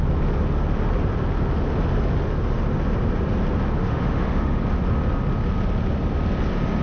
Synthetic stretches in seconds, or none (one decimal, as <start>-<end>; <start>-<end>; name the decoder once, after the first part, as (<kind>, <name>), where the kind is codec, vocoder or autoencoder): 3.8-4.6 (autoencoder, DAC-VAE)